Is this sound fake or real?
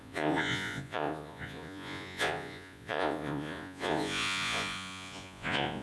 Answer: fake